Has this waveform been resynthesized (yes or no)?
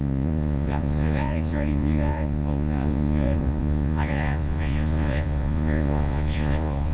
yes